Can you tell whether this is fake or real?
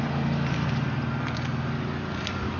fake